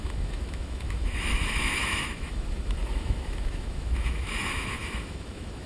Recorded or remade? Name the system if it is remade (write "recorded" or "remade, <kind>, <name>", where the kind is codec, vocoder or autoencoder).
remade, autoencoder, DAC-VAE